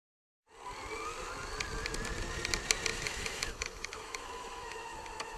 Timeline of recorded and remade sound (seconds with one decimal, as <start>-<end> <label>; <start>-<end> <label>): 0.0-2.9 recorded; 2.9-5.4 remade